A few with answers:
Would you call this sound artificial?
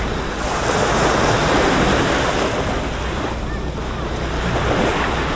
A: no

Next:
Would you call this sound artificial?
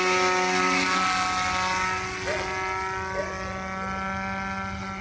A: no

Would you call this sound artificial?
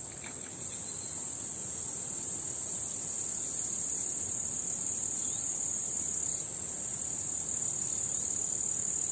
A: no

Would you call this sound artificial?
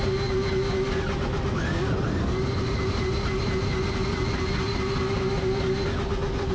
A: no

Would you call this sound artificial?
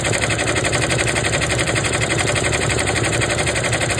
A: yes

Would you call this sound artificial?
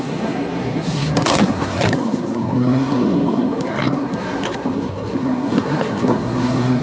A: yes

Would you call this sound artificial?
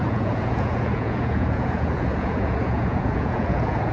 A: yes